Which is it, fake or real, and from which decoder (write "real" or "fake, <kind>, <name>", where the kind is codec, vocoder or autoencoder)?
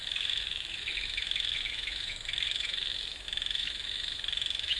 fake, autoencoder, DAC-VAE